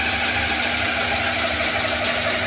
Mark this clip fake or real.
real